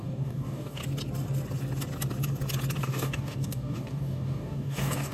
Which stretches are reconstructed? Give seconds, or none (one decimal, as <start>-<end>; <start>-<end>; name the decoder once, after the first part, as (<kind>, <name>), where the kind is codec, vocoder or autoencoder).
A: 0.0-0.8 (codec, DAC); 2.8-5.1